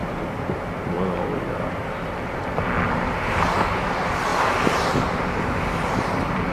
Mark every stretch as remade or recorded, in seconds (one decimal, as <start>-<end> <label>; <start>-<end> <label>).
0.0-6.5 recorded